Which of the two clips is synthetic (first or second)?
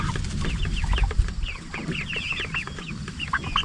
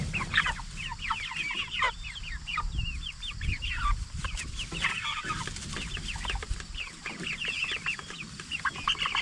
second